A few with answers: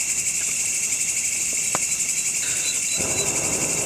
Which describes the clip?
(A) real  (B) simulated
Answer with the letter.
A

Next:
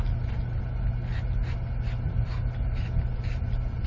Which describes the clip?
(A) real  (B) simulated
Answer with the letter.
A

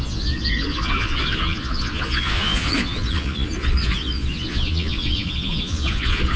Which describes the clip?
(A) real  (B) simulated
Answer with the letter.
B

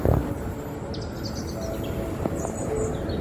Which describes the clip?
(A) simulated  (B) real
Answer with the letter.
B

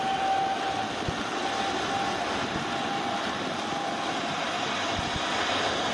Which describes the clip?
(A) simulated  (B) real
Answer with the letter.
B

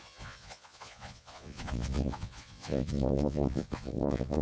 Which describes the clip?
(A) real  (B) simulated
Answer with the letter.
B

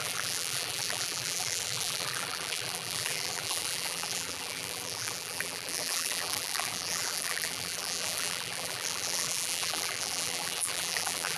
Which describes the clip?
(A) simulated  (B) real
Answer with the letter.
A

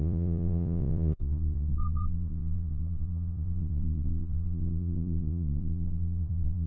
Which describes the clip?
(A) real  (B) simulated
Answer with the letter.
B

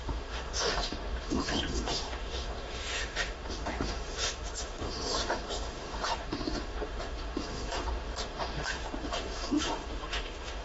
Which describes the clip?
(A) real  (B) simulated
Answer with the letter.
B